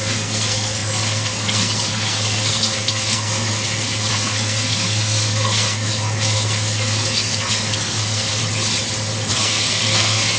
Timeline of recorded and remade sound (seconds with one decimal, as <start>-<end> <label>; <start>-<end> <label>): 0.0-8.4 remade; 8.4-9.3 recorded; 9.3-10.4 remade